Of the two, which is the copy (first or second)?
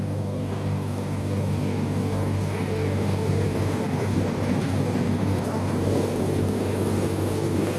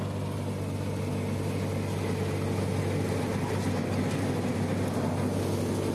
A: first